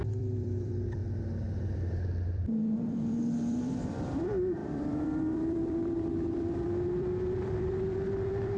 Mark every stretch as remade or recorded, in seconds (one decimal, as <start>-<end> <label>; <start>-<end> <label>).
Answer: 0.0-1.0 remade; 1.0-1.6 recorded; 1.6-8.6 remade